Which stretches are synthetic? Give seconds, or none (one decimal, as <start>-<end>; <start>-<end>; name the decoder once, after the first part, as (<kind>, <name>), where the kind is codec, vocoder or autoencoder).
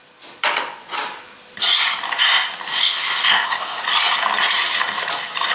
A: 2.7-3.8 (codec, ZipCodec)